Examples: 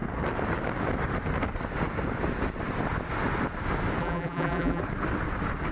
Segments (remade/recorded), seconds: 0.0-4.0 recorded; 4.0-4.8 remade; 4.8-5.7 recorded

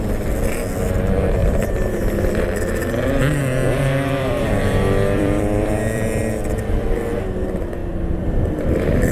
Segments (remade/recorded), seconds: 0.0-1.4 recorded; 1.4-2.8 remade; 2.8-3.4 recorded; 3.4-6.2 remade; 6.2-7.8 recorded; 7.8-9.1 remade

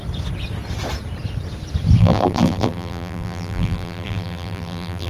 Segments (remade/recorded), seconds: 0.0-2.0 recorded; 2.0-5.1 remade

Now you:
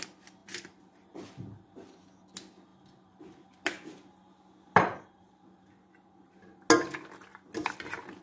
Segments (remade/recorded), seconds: 0.0-0.4 recorded; 0.4-2.0 remade; 2.0-2.7 recorded; 2.7-6.6 remade; 6.6-8.2 recorded

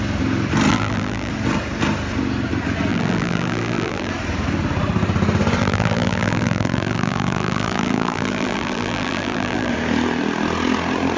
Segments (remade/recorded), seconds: 0.0-0.7 recorded; 0.7-1.3 remade; 1.3-2.9 recorded; 2.9-4.1 remade; 4.1-5.6 recorded; 5.6-9.7 remade; 9.7-11.2 recorded